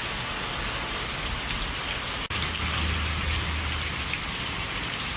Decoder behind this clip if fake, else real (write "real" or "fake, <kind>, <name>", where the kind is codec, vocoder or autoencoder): real